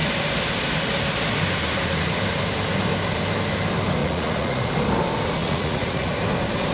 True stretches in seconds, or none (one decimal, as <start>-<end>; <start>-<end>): 0.0-4.0; 4.7-5.4; 6.1-6.7